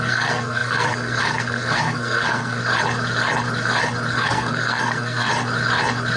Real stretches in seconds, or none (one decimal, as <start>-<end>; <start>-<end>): 2.6-4.1; 5.3-6.2